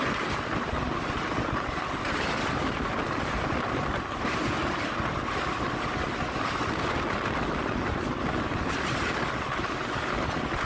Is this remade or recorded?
recorded